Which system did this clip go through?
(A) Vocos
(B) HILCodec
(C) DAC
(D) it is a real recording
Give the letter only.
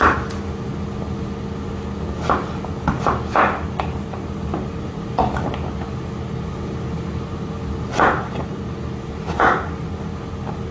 D